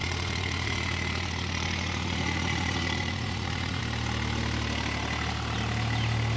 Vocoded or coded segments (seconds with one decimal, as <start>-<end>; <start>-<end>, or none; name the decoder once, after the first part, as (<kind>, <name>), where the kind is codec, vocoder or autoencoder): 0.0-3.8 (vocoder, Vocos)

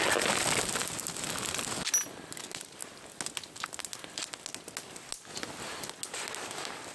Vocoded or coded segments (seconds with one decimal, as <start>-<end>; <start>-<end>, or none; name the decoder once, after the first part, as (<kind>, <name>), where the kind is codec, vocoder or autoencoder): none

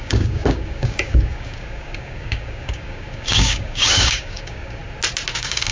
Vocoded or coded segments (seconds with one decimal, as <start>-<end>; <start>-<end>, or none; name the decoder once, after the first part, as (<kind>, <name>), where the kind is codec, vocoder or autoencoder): 0.0-4.8 (codec, DAC); 5.3-5.7

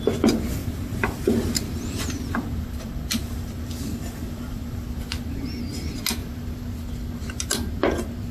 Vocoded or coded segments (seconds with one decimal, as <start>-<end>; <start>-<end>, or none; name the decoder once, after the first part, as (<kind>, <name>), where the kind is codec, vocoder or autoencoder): 0.6-5.6 (vocoder, BigVGAN v2); 6.2-7.8